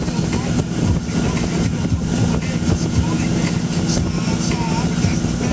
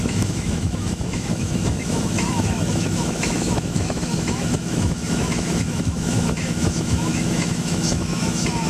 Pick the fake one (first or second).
second